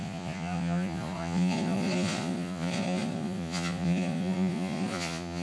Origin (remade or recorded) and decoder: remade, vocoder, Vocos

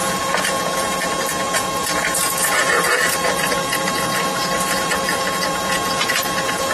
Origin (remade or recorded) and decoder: remade, vocoder, Vocos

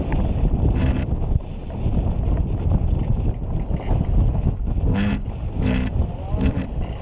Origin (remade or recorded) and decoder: recorded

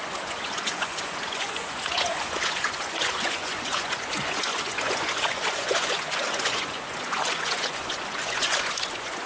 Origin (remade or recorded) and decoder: remade, vocoder, Vocos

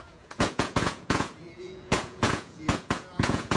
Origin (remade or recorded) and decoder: remade, vocoder, Vocos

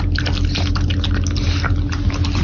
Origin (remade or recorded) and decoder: recorded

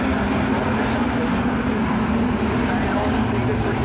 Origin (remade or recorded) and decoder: recorded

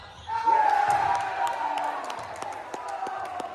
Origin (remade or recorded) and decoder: recorded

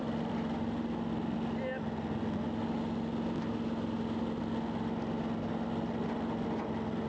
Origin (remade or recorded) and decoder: recorded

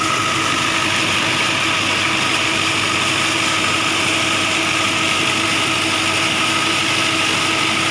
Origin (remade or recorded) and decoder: recorded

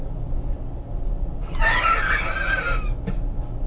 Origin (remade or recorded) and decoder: recorded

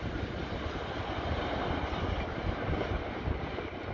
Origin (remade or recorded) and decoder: recorded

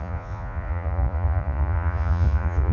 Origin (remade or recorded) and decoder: remade, vocoder, Vocos